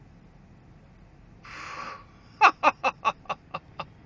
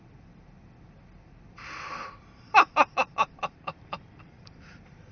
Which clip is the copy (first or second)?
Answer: second